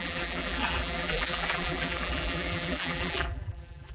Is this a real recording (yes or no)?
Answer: no